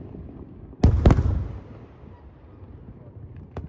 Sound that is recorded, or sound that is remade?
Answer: recorded